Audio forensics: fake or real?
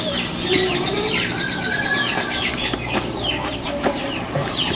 fake